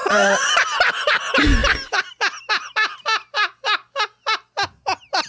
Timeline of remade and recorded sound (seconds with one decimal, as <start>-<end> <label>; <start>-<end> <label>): 0.0-0.5 remade; 0.5-5.3 recorded